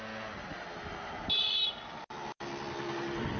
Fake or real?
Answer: real